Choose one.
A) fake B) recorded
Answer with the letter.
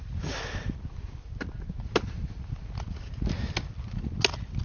B